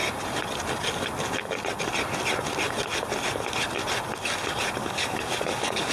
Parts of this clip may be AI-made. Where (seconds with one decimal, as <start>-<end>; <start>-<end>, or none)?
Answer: 4.8-5.9